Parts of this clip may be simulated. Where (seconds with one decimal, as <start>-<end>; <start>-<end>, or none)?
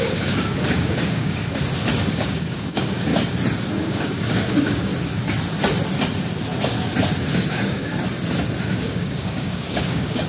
0.0-1.4; 2.1-3.1; 3.7-4.9; 7.5-7.9; 8.6-10.3